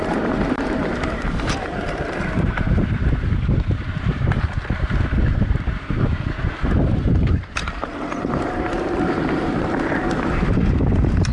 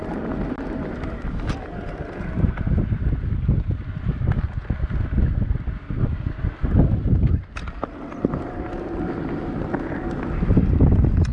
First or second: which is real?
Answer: second